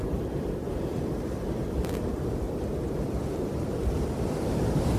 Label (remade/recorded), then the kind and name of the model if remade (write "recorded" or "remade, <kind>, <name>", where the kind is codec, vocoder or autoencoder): remade, vocoder, BigVGAN v2